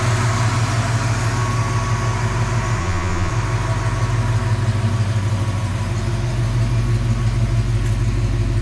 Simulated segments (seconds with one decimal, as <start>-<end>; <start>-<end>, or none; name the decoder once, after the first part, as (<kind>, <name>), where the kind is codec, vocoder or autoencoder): 2.8-3.3 (vocoder, Vocos)